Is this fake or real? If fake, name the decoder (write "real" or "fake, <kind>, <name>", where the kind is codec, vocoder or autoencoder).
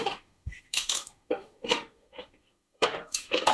fake, autoencoder, DAC-VAE